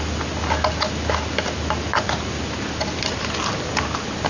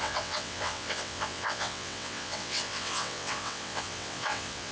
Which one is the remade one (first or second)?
second